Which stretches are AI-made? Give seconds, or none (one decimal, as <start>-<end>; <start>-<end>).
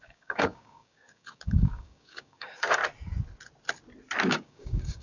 0.0-2.8; 4.3-5.0